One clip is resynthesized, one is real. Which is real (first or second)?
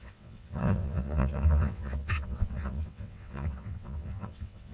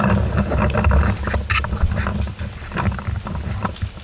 second